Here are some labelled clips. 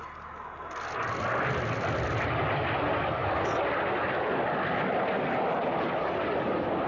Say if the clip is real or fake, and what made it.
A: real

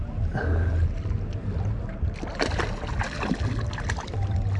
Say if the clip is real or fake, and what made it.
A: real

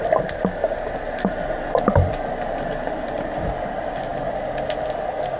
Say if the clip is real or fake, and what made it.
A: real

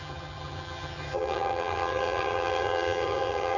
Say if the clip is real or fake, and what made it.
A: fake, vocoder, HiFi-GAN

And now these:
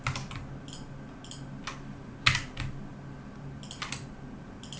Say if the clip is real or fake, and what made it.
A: real